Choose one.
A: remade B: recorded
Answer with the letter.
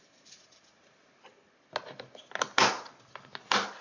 B